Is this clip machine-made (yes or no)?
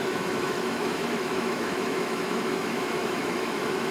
yes